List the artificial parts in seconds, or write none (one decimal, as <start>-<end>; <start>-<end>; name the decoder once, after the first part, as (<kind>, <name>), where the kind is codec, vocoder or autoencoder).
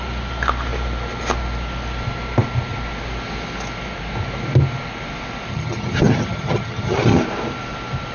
5.5-7.2 (vocoder, HiFi-GAN)